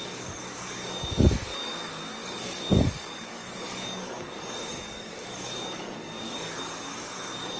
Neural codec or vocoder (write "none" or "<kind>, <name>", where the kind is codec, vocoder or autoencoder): codec, DAC